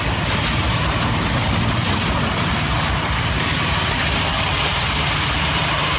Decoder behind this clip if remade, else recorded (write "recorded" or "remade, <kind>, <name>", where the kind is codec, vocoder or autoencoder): recorded